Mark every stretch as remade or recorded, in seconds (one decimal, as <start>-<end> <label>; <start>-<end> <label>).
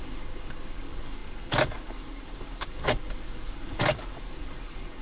0.0-5.0 remade